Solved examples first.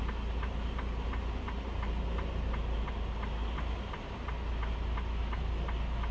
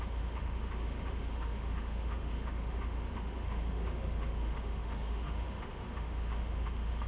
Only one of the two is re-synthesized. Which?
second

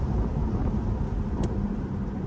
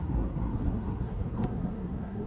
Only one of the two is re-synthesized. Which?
second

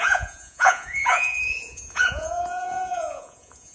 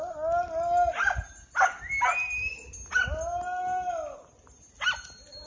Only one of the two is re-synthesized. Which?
first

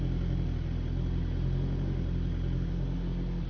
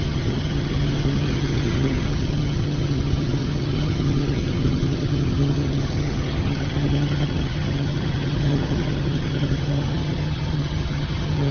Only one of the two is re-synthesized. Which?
second